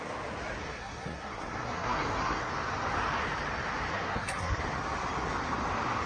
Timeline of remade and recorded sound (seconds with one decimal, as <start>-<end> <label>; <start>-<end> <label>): 0.0-0.6 recorded; 0.6-2.5 remade; 2.5-3.9 recorded; 3.9-4.6 remade; 4.6-6.1 recorded